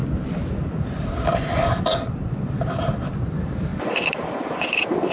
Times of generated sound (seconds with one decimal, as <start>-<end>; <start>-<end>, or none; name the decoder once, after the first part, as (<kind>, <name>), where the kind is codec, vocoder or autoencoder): 3.1-5.1 (vocoder, BigVGAN v2)